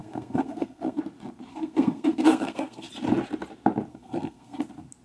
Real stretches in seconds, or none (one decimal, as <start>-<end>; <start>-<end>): 1.0-1.5; 2.9-3.9; 4.6-5.0

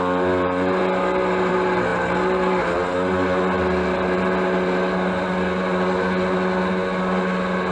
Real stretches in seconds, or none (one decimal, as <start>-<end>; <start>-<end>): 0.0-7.7

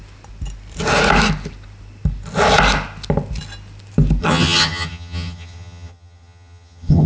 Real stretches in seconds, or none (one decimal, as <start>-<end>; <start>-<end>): 0.0-4.2

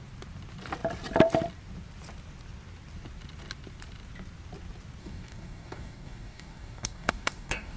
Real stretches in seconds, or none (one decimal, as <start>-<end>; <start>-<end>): 0.0-5.0

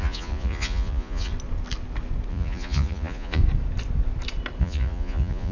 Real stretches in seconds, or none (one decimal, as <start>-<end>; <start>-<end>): 1.3-2.3; 3.4-4.6

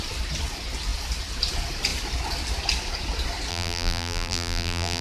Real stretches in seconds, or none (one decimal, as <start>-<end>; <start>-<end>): 0.0-3.5